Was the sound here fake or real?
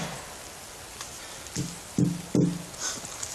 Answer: real